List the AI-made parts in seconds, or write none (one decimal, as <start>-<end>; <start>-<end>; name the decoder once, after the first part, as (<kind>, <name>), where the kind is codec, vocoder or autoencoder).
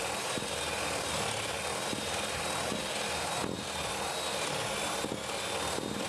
none